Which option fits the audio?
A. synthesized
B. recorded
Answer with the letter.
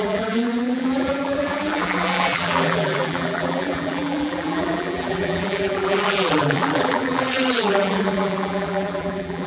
A